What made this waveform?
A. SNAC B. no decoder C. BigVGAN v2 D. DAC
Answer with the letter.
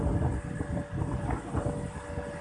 B